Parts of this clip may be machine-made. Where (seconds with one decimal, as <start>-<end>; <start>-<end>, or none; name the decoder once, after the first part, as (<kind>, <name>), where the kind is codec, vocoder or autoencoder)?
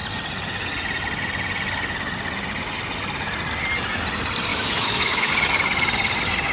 4.5-5.3 (autoencoder, DAC-VAE)